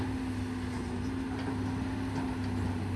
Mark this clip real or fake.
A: real